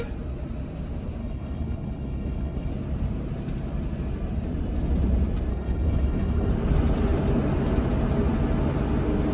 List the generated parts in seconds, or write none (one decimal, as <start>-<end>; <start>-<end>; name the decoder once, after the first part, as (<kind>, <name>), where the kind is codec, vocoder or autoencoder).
1.2-2.7 (codec, HILCodec); 5.5-6.5